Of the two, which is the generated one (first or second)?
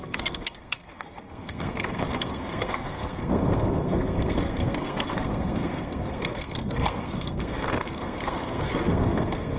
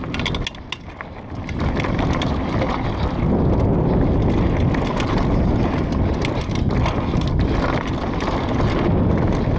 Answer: first